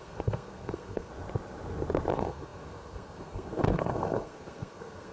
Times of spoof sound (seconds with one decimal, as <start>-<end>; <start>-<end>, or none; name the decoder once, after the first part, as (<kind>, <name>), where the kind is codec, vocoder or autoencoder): 0.0-1.1 (codec, SNAC); 2.1-5.1

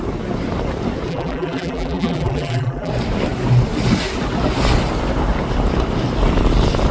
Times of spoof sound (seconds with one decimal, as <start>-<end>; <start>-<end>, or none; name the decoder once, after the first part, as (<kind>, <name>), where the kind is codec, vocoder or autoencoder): 1.1-2.9 (vocoder, BigVGAN v2)

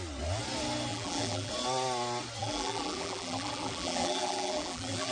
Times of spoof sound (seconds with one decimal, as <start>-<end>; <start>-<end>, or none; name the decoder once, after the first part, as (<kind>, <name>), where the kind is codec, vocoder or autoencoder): 0.9-1.5 (vocoder, BigVGAN v2); 2.4-5.1

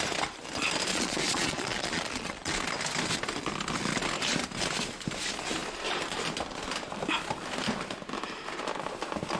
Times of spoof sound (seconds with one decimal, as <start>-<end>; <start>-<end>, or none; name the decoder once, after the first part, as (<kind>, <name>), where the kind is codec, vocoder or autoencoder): 0.9-2.5 (vocoder, Vocos)

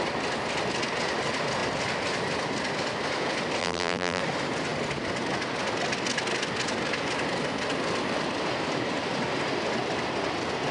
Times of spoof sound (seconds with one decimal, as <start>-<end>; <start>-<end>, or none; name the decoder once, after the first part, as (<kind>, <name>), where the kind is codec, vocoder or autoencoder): 3.6-4.2 (vocoder, BigVGAN v2)

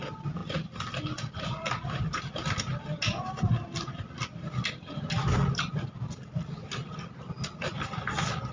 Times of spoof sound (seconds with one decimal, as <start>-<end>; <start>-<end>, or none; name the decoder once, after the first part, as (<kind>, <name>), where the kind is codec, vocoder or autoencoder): 0.4-2.2 (vocoder, BigVGAN v2)